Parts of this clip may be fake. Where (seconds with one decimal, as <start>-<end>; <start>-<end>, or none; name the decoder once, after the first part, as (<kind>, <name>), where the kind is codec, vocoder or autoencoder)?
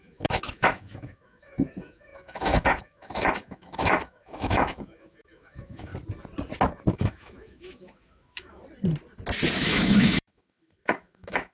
0.0-5.9 (autoencoder, DAC-VAE); 6.9-8.6; 9.6-11.5